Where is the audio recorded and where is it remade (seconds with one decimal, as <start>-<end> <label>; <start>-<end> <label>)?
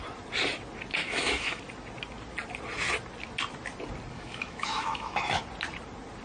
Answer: 0.0-1.0 recorded; 1.0-1.6 remade; 1.6-4.1 recorded; 4.1-5.4 remade; 5.4-6.2 recorded